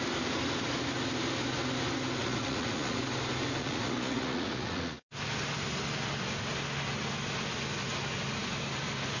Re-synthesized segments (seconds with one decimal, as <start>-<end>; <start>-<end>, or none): 2.2-3.0; 3.6-5.0